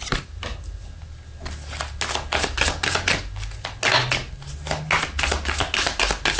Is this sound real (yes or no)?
yes